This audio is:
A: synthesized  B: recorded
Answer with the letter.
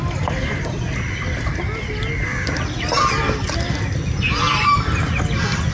B